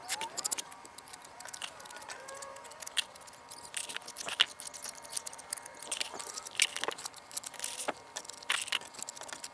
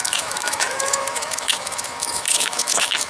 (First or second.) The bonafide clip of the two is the first